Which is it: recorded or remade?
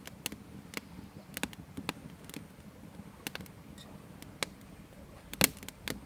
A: recorded